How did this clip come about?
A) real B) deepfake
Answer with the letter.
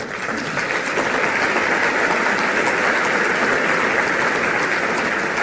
A